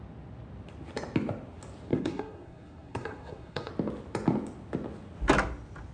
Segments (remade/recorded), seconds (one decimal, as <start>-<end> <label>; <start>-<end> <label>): 0.0-1.9 recorded; 1.9-3.7 remade; 3.7-5.9 recorded